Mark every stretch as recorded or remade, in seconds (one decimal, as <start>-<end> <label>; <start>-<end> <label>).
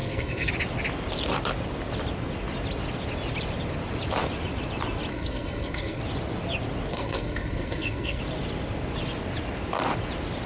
0.0-0.5 remade; 0.5-5.1 recorded; 5.1-6.0 remade; 6.0-6.9 recorded; 6.9-8.2 remade; 8.2-10.5 recorded